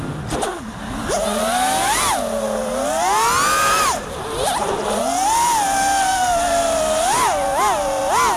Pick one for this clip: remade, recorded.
recorded